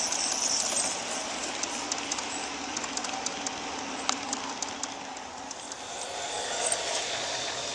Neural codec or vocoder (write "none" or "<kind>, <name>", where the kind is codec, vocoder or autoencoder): none